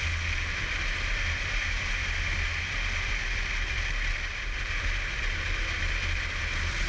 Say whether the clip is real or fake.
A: fake